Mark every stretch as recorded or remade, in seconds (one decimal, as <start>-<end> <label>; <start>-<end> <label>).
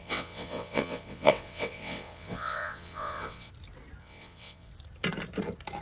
0.0-3.5 remade; 3.5-4.0 recorded; 4.0-4.7 remade; 4.7-5.8 recorded